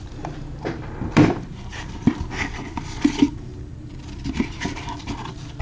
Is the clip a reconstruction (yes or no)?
yes